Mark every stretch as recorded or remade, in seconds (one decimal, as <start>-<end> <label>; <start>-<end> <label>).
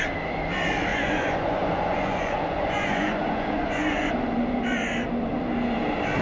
0.0-0.9 recorded; 0.9-4.1 remade; 4.1-6.2 recorded